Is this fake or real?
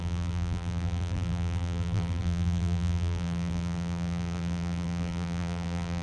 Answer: fake